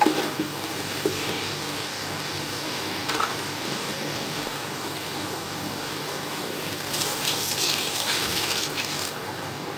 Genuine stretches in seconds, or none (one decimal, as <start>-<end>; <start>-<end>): none